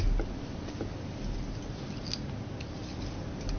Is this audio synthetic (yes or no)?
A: no